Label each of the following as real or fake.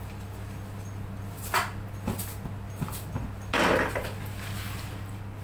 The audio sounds real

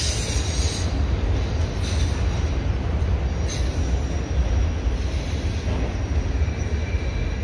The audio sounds real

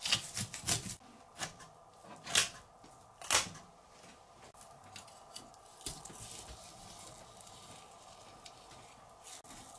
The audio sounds real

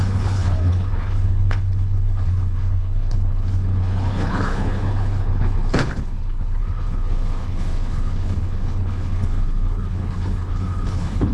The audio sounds fake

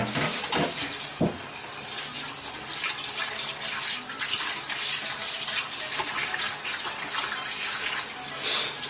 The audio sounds real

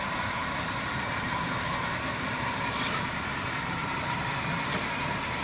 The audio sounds fake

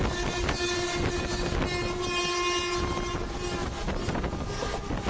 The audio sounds real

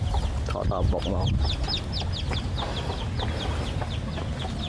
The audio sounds real